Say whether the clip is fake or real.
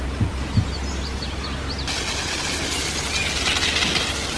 real